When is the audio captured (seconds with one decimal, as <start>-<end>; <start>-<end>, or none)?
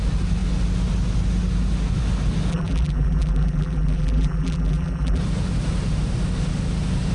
0.0-2.5; 5.2-7.1